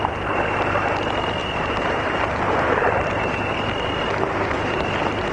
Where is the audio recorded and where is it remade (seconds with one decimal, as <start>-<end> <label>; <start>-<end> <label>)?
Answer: 0.0-1.4 recorded; 1.4-3.4 remade; 3.4-5.3 recorded